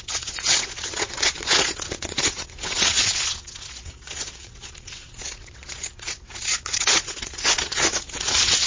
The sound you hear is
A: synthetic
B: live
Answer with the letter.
A